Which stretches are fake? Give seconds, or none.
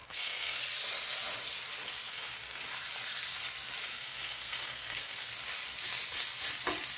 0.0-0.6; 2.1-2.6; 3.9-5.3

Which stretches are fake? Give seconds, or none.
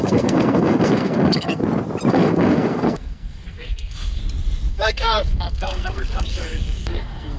0.0-1.6; 2.1-4.2; 4.7-7.4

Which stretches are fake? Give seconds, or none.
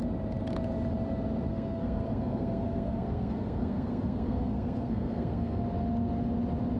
1.5-5.6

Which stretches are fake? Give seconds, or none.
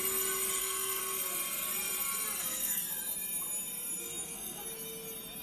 0.6-1.0; 2.4-2.8; 4.0-4.6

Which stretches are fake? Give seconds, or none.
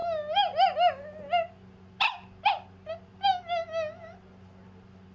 none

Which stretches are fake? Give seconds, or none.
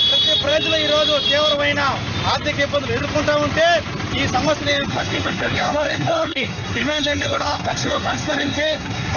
4.9-9.2